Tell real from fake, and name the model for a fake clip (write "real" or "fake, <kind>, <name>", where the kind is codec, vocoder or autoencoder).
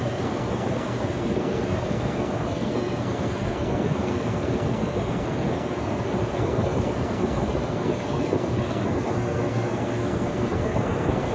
fake, codec, SNAC